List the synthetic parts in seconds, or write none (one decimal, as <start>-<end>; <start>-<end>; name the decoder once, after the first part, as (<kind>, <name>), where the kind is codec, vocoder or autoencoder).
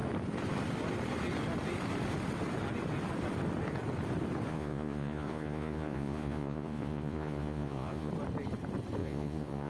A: 4.5-8.1 (vocoder, Vocos); 9.0-9.7